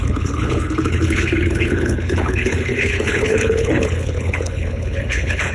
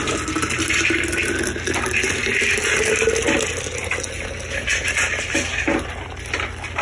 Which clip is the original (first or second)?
second